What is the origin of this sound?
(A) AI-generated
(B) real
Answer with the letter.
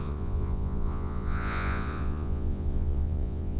A